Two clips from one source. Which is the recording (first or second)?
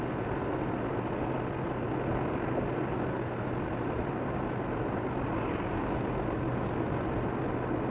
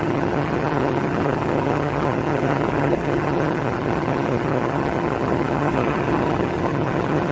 first